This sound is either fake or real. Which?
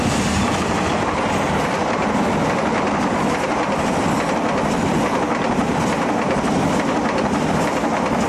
real